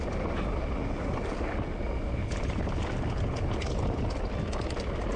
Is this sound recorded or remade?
recorded